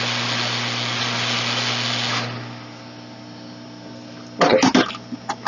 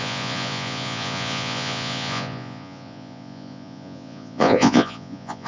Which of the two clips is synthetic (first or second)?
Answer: second